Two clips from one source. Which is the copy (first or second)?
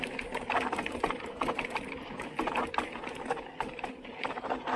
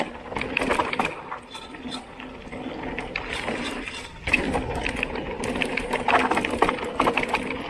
first